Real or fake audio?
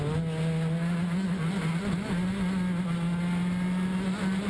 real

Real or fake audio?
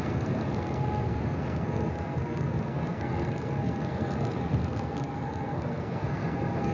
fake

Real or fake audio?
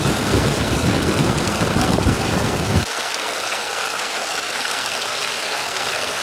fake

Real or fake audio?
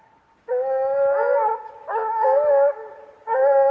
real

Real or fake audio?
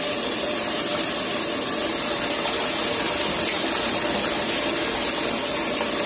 real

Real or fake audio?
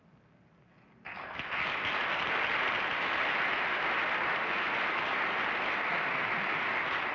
real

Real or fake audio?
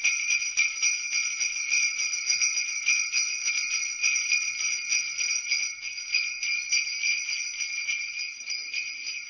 real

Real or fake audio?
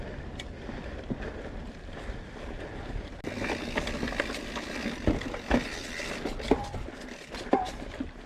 real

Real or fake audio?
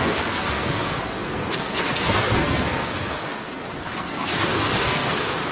fake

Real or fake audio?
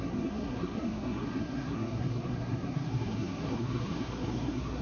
fake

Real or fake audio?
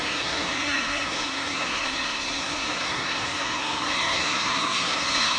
fake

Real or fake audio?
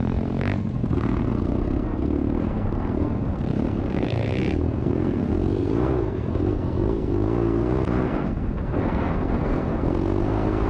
fake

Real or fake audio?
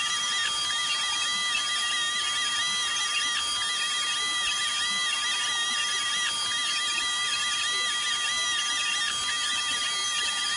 real